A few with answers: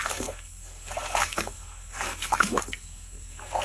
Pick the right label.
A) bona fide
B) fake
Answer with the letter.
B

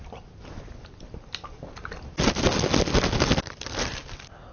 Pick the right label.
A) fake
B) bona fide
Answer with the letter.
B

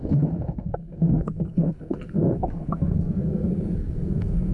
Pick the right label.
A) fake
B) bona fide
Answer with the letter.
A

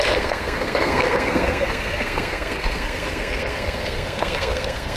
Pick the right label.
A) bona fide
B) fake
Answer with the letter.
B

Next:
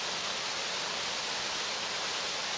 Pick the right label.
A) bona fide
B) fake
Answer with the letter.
A